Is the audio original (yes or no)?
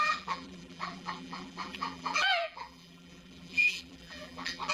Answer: no